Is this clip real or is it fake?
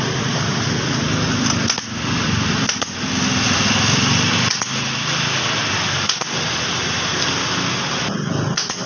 real